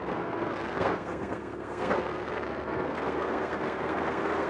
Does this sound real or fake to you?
fake